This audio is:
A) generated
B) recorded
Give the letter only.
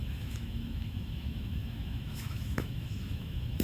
A